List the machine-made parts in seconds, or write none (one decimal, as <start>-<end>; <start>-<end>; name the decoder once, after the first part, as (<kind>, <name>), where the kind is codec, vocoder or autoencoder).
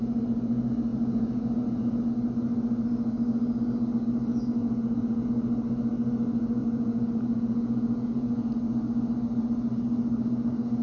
0.9-2.1 (vocoder, Vocos); 4.6-5.3; 6.6-8.5